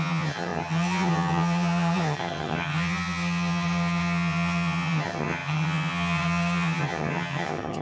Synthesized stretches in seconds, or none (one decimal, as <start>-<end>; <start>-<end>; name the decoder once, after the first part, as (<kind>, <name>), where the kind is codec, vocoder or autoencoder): 0.0-7.8 (vocoder, HiFi-GAN)